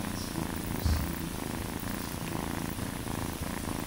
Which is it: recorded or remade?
recorded